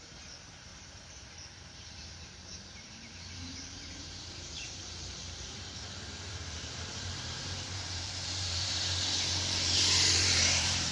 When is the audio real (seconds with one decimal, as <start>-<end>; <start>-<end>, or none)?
0.7-1.3